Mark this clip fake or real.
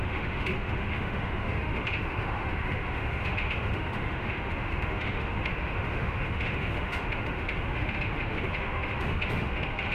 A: fake